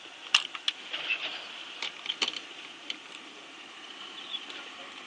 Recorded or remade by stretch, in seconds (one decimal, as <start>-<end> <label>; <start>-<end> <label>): 0.0-1.3 recorded; 1.3-3.9 remade; 3.9-5.1 recorded